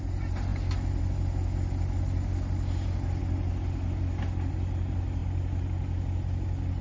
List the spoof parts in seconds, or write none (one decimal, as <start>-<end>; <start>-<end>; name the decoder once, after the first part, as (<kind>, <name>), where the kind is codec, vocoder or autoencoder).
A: none